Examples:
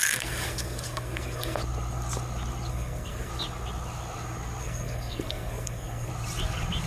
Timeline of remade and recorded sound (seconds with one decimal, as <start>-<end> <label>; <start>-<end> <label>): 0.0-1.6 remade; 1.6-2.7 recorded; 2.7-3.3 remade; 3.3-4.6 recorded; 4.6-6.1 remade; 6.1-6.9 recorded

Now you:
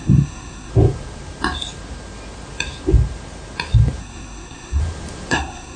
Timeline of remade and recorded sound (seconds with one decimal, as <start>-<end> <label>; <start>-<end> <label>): 0.0-0.7 remade; 0.7-4.0 recorded; 4.0-4.8 remade; 4.8-5.3 recorded; 5.3-5.8 remade

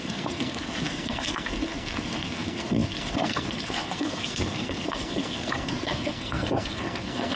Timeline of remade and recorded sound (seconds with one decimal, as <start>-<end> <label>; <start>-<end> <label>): 0.0-7.4 remade

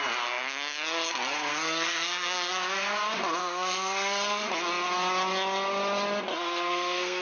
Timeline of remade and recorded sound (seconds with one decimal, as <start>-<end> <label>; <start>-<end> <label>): 0.0-1.5 recorded; 1.5-2.5 remade; 2.5-3.4 recorded; 3.4-4.5 remade; 4.5-6.3 recorded; 6.3-7.2 remade

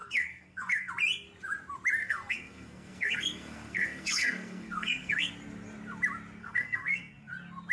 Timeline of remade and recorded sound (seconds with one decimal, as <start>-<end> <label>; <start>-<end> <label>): 0.0-0.9 remade; 0.9-2.0 recorded; 2.0-5.3 remade; 5.3-6.4 recorded; 6.4-7.3 remade; 7.3-7.7 recorded

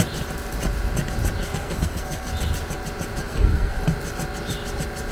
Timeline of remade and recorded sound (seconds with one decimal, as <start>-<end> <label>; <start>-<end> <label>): 0.0-1.4 recorded; 1.4-2.3 remade; 2.3-3.2 recorded; 3.2-3.8 remade; 3.8-5.1 recorded

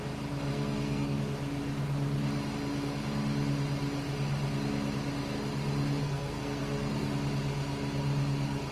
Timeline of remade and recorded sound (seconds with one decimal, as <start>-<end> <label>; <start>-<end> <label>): 0.0-0.5 recorded; 0.5-1.2 remade; 1.2-6.0 recorded; 6.0-7.1 remade; 7.1-8.7 recorded